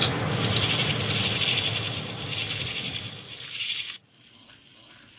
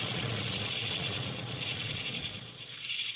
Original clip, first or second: first